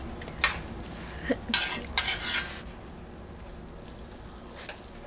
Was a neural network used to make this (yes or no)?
no